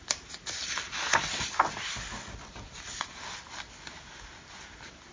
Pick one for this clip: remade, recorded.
recorded